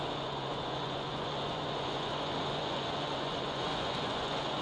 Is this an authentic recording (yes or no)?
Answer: no